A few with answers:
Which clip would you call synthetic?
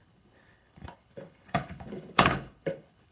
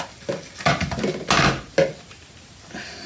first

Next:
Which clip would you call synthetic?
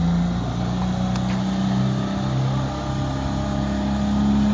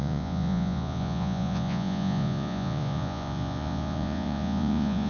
second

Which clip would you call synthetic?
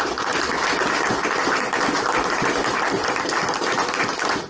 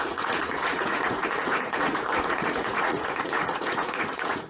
second